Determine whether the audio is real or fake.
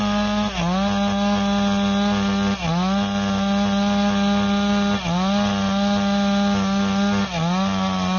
real